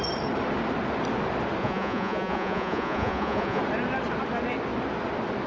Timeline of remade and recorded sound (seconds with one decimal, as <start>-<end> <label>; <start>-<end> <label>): 0.0-1.6 recorded; 1.6-3.6 remade; 3.6-5.5 recorded